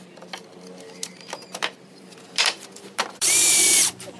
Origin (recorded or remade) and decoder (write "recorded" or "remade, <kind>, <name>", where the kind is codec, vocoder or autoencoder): remade, vocoder, BigVGAN v2